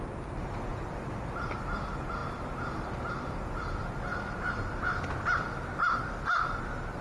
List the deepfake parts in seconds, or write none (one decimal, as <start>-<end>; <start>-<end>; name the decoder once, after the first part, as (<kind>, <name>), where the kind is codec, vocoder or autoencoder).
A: none